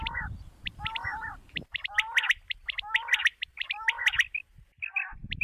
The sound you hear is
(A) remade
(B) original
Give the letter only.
B